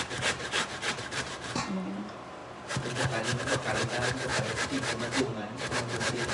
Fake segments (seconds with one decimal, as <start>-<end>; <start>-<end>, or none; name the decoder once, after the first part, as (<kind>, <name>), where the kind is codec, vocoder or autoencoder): 0.0-2.4 (vocoder, BigVGAN v2); 3.4-6.3